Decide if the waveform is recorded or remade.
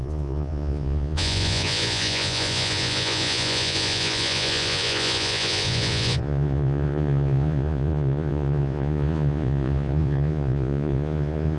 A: remade